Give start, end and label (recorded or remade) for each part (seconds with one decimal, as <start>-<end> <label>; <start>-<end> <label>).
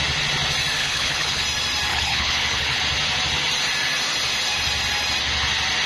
0.0-0.8 recorded; 0.8-1.4 remade; 1.4-1.9 recorded; 1.9-2.8 remade; 2.8-5.9 recorded